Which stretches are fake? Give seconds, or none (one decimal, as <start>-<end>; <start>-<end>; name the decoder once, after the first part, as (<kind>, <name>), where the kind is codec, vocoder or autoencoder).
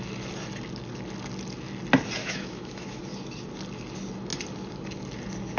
2.2-3.0 (autoencoder, DAC-VAE)